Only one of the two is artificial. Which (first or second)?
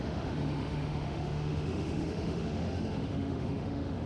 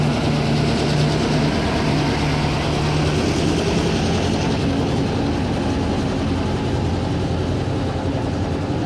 first